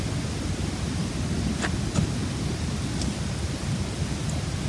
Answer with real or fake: real